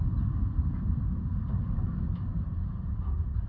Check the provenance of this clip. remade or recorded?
remade